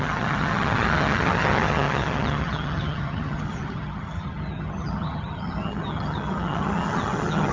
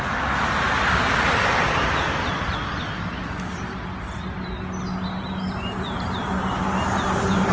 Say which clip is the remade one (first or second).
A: first